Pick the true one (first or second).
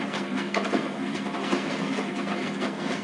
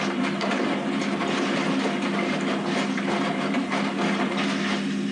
second